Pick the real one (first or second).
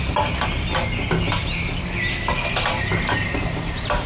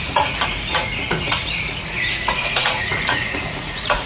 first